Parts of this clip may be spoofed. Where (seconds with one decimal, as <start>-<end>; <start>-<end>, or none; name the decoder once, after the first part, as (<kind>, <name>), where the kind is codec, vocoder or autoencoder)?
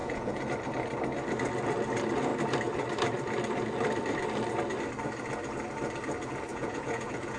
0.0-0.5 (vocoder, Vocos); 6.5-7.4